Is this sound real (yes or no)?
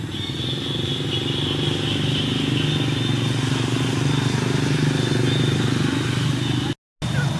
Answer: yes